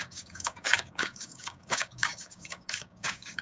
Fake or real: fake